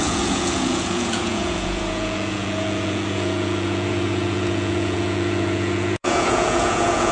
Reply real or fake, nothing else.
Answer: fake